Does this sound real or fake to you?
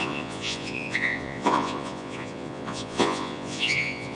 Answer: fake